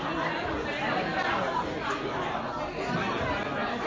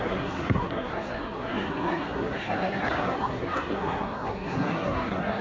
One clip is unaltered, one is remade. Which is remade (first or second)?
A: second